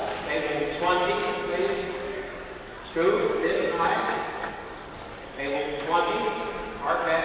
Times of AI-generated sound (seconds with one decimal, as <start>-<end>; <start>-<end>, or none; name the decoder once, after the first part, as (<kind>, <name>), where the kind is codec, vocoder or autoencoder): 1.7-6.0 (codec, DAC)